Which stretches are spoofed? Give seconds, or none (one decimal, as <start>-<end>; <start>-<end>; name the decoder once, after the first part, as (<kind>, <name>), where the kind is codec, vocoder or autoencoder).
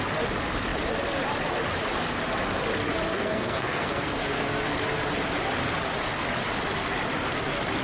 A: 3.1-4.6 (codec, SNAC)